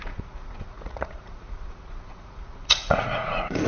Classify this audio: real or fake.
fake